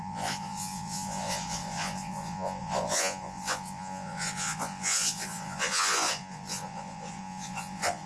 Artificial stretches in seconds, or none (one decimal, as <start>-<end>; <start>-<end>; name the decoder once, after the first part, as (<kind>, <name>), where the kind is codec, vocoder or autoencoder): 0.0-8.1 (vocoder, Vocos)